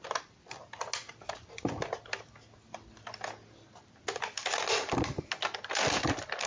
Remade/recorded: recorded